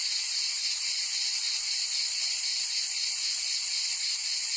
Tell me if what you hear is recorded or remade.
recorded